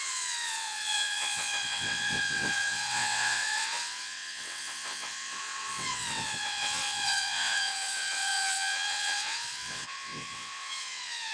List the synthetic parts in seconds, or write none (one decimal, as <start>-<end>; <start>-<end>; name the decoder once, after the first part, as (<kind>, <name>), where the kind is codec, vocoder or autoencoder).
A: 0.0-11.3 (vocoder, WaveNeXt)